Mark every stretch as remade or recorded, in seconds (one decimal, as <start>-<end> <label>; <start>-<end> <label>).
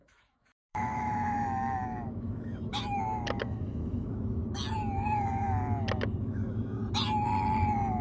0.0-4.4 remade; 4.4-6.2 recorded; 6.2-6.8 remade; 6.8-8.0 recorded